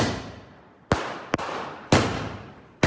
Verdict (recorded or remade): recorded